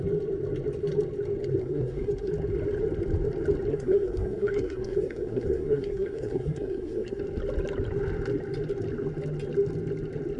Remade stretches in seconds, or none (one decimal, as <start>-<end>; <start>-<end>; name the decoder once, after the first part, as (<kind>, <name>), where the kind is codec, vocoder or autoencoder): 1.6-2.3 (codec, SNAC); 3.7-7.2